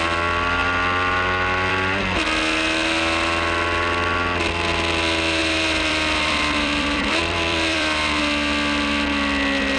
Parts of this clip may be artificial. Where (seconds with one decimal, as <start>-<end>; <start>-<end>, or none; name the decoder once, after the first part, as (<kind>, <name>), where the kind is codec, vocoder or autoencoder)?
5.4-8.2 (vocoder, BigVGAN v2)